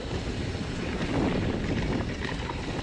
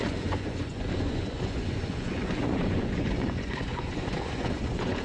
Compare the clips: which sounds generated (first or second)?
second